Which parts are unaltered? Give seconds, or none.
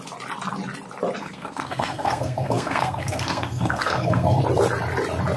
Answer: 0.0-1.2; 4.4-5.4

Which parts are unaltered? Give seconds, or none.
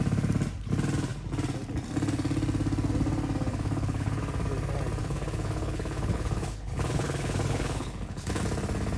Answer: 0.0-3.5; 4.2-5.0; 8.4-9.0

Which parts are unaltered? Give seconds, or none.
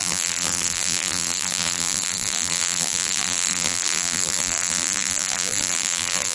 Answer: none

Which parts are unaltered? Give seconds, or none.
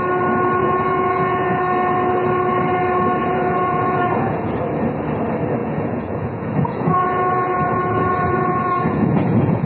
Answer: 0.0-0.6; 1.6-3.2; 4.5-5.6